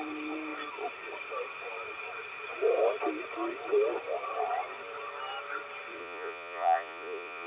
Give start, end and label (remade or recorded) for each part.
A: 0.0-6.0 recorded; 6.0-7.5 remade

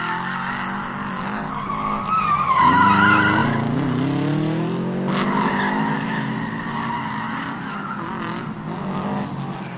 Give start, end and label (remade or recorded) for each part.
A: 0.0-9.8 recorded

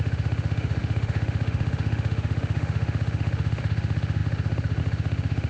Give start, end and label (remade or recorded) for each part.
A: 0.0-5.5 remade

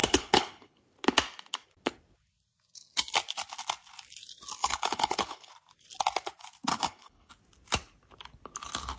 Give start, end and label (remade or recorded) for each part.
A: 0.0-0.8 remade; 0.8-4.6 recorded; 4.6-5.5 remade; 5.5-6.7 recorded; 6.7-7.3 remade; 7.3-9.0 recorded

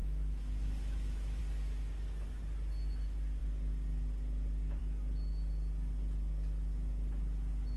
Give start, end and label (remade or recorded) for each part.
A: 0.0-1.4 remade; 1.4-7.8 recorded

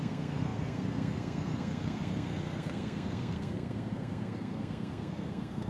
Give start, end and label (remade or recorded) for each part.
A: 0.0-5.7 remade

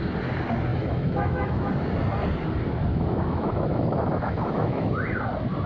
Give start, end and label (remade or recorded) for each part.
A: 0.0-0.7 recorded; 0.7-1.7 remade; 1.7-2.9 recorded; 2.9-4.9 remade; 4.9-5.7 recorded